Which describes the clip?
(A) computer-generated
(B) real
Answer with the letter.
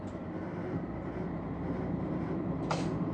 A